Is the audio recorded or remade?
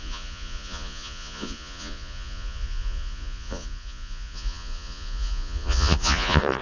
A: remade